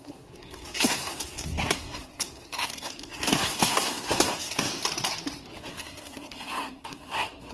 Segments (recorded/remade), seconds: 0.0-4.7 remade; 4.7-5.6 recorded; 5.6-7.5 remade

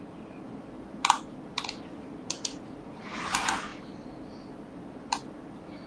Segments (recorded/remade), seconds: 0.0-5.9 recorded

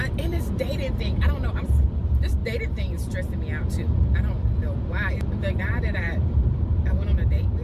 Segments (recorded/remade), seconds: 0.0-2.4 remade; 2.4-5.6 recorded; 5.6-7.6 remade

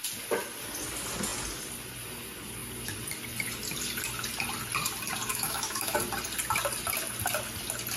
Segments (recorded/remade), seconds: 0.0-5.3 recorded; 5.3-6.0 remade; 6.0-8.0 recorded

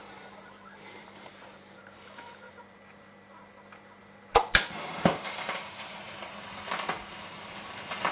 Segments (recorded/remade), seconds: 0.0-3.4 remade; 3.4-4.0 recorded; 4.0-6.2 remade; 6.2-8.1 recorded

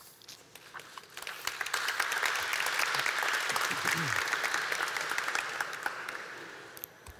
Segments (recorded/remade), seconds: 0.0-7.2 recorded

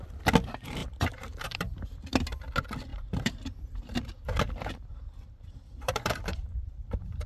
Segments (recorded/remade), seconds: 0.0-0.8 recorded; 0.8-1.6 remade; 1.6-2.9 recorded; 2.9-7.3 remade